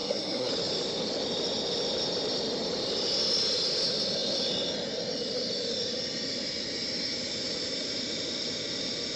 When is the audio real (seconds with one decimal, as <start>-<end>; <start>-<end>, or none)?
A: 0.5-9.2